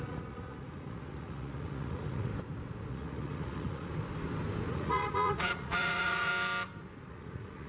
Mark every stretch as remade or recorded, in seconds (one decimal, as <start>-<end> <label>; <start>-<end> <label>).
0.0-2.3 remade; 2.3-2.9 recorded; 2.9-3.9 remade; 3.9-4.7 recorded; 4.7-6.3 remade; 6.3-7.1 recorded; 7.1-7.7 remade